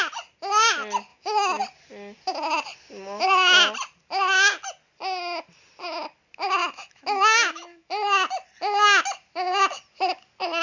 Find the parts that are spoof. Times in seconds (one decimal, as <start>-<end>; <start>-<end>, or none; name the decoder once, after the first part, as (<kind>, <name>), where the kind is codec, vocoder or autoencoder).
1.1-1.6 (autoencoder, DAC-VAE); 6.6-7.9